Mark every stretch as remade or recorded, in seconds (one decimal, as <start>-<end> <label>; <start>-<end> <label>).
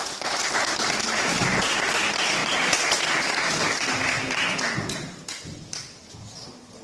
0.0-6.8 recorded